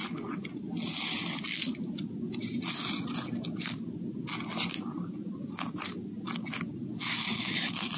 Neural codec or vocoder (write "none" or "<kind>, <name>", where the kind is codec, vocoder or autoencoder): none